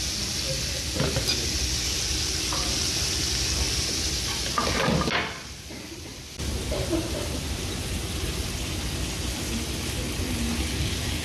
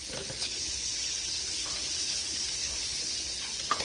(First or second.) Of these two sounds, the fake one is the second